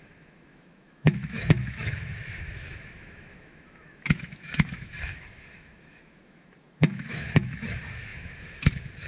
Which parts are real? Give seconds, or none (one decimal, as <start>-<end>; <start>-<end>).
none